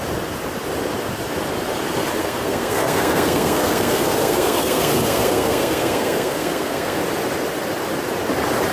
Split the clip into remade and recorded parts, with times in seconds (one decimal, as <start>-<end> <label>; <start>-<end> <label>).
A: 0.0-2.2 recorded; 2.2-7.0 remade; 7.0-8.7 recorded